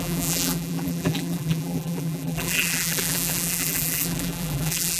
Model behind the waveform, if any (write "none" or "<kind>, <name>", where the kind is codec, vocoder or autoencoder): vocoder, BigVGAN v2